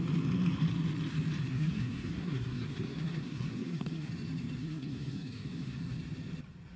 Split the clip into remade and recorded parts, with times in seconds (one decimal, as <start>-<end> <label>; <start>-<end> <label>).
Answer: 0.0-1.5 recorded; 1.5-4.1 remade; 4.1-4.6 recorded; 4.6-5.8 remade; 5.8-6.8 recorded